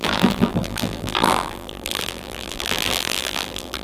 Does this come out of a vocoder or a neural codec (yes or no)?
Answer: yes